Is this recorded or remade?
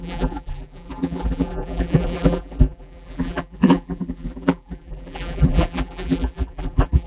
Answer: remade